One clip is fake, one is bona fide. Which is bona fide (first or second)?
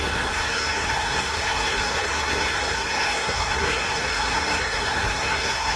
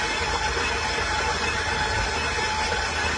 second